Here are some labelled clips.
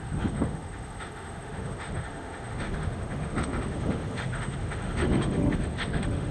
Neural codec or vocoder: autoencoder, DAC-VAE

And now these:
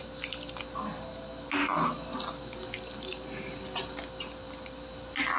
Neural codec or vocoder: none